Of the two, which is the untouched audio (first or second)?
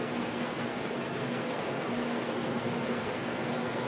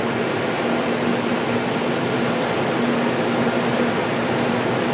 second